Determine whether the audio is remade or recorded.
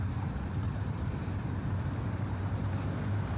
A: remade